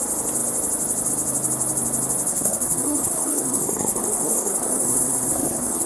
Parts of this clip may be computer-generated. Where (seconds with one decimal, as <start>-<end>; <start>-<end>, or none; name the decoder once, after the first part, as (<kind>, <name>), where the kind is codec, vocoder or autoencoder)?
2.3-5.9 (codec, SNAC)